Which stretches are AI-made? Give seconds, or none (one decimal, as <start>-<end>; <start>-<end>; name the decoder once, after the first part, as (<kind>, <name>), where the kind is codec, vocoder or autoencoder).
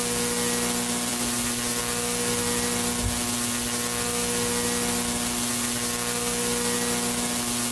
none